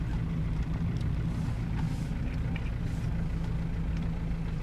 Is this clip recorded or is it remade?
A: recorded